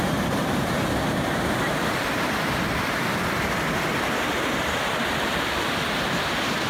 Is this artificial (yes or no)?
no